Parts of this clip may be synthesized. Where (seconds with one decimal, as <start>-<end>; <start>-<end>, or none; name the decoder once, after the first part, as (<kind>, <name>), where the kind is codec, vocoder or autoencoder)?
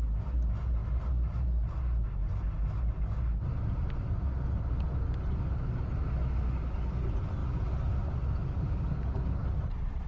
none